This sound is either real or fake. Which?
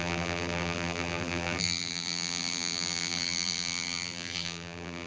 fake